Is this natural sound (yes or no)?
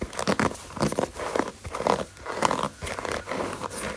yes